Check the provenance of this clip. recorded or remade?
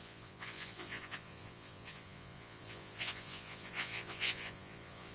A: remade